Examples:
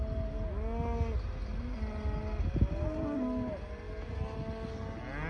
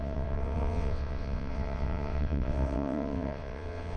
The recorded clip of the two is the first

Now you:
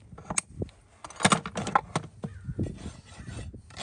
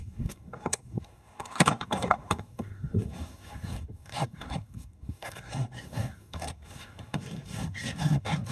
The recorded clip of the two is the first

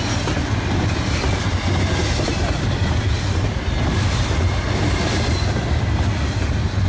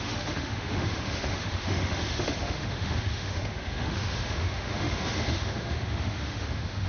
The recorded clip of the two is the first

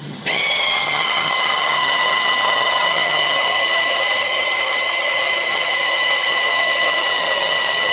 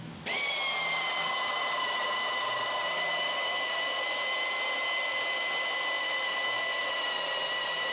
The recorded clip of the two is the second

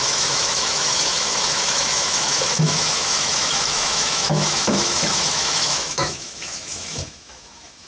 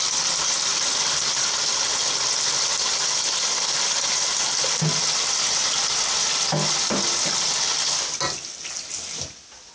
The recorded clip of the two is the second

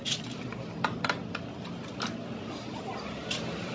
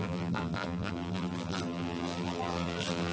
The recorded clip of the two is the first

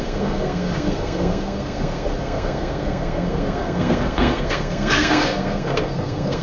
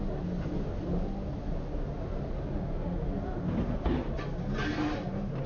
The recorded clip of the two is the second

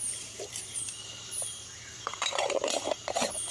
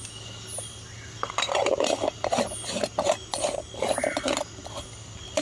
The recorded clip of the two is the second